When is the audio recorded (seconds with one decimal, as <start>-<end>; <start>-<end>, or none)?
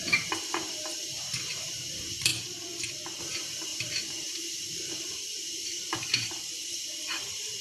2.3-3.2